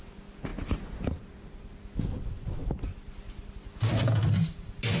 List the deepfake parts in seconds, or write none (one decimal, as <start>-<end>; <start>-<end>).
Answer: none